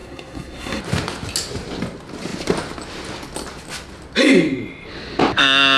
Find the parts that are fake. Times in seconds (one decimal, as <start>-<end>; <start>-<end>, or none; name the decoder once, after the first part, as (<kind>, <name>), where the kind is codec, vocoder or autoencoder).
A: 0.0-0.8 (codec, SNAC)